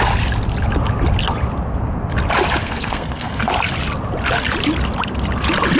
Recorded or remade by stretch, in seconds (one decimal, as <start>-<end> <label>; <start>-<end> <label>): 0.0-2.6 recorded; 2.6-3.5 remade; 3.5-5.8 recorded